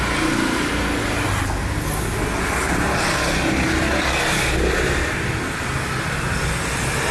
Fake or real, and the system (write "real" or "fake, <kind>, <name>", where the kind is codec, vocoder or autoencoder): real